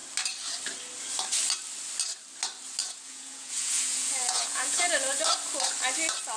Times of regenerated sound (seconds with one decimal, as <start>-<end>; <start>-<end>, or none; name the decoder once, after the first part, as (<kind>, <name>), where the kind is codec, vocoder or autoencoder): 2.8-4.8 (vocoder, Vocos)